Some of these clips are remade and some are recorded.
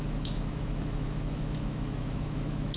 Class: remade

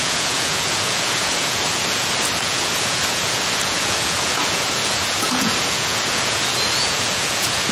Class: remade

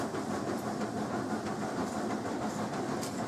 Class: remade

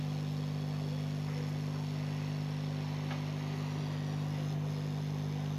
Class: recorded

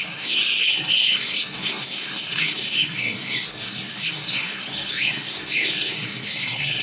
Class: remade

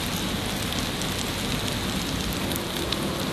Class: recorded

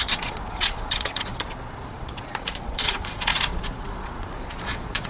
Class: remade